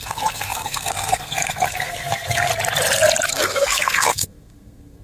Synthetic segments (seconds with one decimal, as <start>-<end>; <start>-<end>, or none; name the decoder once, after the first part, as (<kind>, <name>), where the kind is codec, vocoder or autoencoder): 0.0-2.5 (codec, SNAC); 3.3-5.0